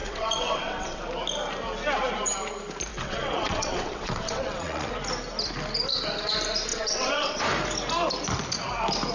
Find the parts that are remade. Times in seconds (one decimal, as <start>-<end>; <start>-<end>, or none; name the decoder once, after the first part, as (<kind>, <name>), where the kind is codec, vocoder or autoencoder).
0.0-1.0 (vocoder, WaveNeXt); 2.9-4.9; 6.7-7.4